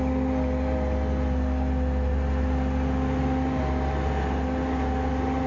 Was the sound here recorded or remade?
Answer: recorded